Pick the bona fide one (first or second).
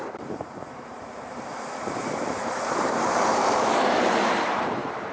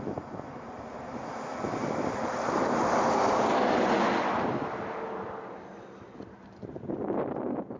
second